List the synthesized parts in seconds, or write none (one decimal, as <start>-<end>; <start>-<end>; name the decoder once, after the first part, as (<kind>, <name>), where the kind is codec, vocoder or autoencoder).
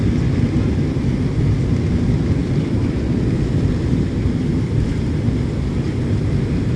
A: 2.4-2.9 (vocoder, BigVGAN v2)